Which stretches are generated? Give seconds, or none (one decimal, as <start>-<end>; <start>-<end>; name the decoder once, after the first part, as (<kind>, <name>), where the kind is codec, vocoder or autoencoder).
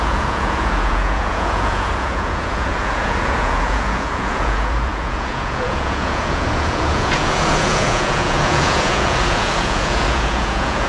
0.0-10.9 (vocoder, Vocos)